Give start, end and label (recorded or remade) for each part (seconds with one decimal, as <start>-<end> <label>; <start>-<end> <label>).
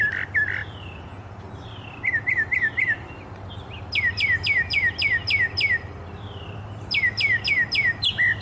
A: 0.0-0.6 recorded; 0.6-1.5 remade; 1.5-8.4 recorded